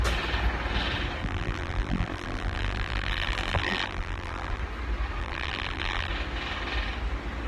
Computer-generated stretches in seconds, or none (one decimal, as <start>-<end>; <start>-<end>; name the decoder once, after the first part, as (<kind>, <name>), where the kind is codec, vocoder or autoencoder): 1.2-4.6 (vocoder, BigVGAN v2); 5.2-6.1

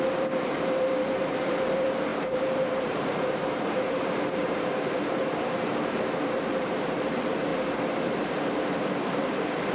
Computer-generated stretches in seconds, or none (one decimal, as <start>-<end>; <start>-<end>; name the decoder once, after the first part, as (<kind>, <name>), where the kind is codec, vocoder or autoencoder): 0.0-7.5 (vocoder, BigVGAN v2); 8.0-9.7

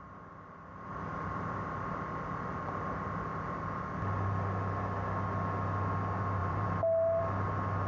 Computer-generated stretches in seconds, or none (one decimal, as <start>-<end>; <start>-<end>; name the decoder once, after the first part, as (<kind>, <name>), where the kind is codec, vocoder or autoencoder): 6.4-7.2 (vocoder, BigVGAN v2)

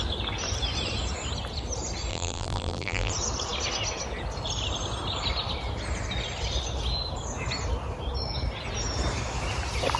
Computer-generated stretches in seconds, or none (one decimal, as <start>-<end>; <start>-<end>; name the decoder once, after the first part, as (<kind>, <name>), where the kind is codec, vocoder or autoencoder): 2.1-3.1 (vocoder, BigVGAN v2)

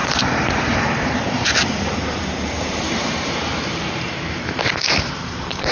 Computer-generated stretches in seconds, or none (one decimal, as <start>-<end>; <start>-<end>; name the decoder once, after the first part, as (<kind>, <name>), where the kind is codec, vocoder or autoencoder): 0.0-5.7 (vocoder, BigVGAN v2)